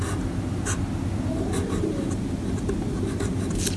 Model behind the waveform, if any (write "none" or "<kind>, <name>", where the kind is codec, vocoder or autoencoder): none